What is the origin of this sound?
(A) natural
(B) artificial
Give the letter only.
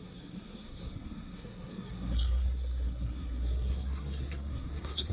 B